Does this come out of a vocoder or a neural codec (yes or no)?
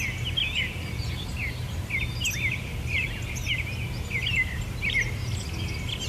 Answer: no